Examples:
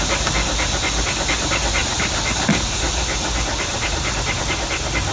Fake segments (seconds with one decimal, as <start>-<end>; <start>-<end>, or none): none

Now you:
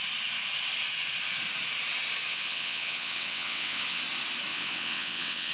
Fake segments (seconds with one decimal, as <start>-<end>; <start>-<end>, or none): 2.3-4.0; 4.5-5.5

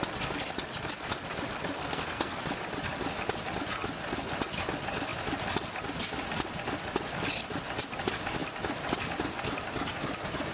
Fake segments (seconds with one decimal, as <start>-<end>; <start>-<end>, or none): 1.8-2.4